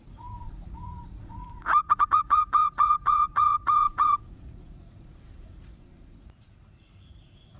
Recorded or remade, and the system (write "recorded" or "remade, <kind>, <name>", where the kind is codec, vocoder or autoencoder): remade, vocoder, Vocos